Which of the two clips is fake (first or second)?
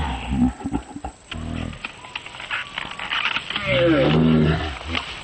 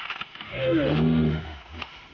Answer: second